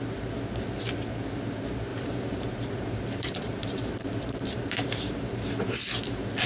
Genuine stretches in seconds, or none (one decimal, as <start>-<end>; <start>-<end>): 0.0-1.9; 5.8-6.5